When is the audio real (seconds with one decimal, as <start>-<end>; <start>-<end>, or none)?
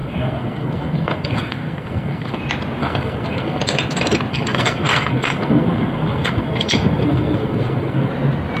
2.4-2.8; 3.6-4.3; 8.1-8.6